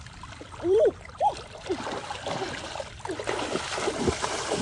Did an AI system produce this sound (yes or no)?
yes